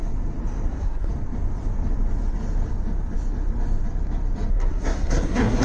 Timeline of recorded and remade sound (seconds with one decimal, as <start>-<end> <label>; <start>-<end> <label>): 0.0-0.7 recorded; 0.7-1.1 remade; 1.1-4.5 recorded; 4.5-5.6 remade